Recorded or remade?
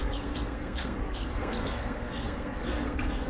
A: remade